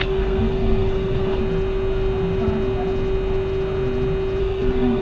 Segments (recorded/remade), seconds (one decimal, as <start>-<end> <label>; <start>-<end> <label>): 0.0-1.4 remade; 1.4-4.4 recorded; 4.4-5.0 remade